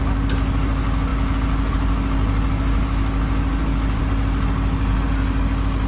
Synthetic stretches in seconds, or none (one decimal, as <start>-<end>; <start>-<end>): none